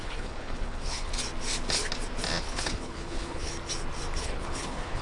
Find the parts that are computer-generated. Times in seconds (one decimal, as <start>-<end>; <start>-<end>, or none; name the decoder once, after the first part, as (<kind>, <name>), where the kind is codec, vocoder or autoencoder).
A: 0.0-1.1 (codec, HILCodec); 2.4-3.5; 4.2-5.0